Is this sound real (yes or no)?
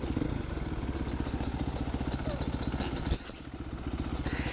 yes